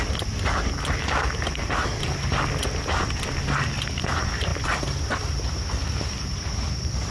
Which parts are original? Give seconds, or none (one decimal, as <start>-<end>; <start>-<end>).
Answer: 0.0-7.1